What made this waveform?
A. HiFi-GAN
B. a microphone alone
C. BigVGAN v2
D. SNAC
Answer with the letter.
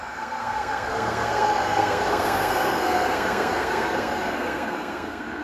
D